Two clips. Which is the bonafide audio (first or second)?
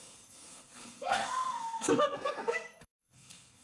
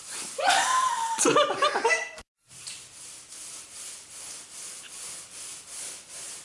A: second